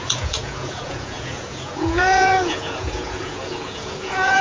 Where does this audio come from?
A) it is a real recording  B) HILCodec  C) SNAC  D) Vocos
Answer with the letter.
D